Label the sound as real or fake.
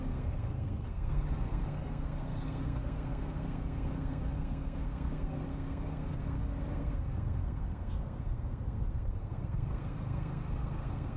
fake